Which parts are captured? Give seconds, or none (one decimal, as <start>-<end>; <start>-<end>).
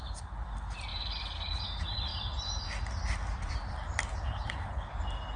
0.0-4.1; 4.9-5.4